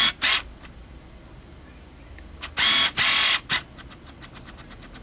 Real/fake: real